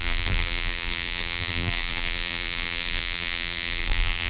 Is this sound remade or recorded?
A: remade